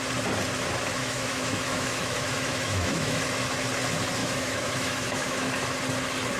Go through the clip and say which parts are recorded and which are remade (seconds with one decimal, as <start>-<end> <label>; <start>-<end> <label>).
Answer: 0.0-1.0 recorded; 1.0-3.2 remade; 3.2-4.2 recorded; 4.2-5.5 remade; 5.5-6.4 recorded